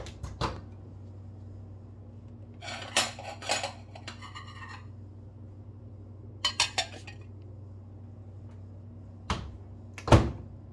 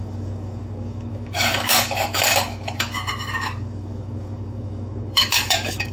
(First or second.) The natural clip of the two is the first